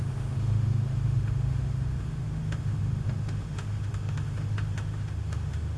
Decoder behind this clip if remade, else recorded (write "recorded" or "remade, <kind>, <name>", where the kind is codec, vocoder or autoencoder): remade, autoencoder, DAC-VAE